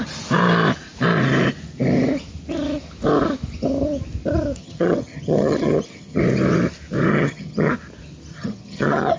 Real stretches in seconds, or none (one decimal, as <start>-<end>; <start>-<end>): 0.0-4.6; 6.2-7.1; 7.7-8.3